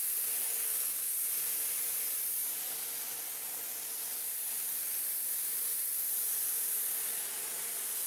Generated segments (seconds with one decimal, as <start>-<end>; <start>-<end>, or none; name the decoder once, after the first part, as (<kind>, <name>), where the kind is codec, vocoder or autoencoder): 0.4-1.1 (codec, DAC)